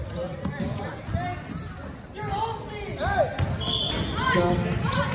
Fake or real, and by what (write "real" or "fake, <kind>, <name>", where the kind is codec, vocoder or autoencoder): real